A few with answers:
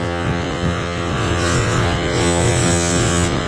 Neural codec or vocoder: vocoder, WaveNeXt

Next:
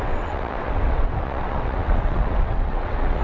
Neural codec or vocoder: vocoder, WaveNeXt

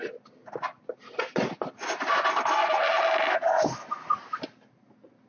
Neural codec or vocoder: none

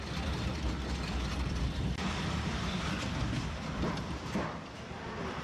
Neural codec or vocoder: none